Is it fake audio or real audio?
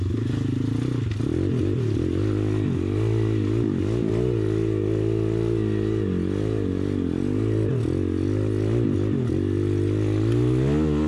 real